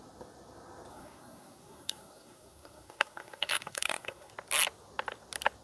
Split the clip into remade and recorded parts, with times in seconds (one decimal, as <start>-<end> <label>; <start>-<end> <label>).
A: 0.0-0.9 recorded; 0.9-4.3 remade; 4.3-5.6 recorded